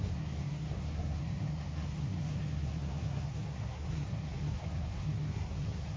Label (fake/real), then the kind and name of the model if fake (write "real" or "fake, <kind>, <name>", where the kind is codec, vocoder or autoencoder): fake, codec, SNAC